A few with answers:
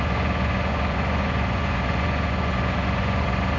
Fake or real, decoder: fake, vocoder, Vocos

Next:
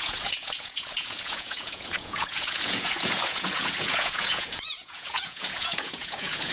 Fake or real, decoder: fake, vocoder, Vocos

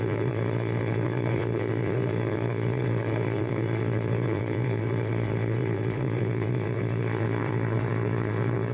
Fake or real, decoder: fake, vocoder, Vocos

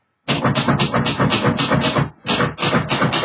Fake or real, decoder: real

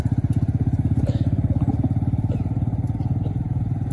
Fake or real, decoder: real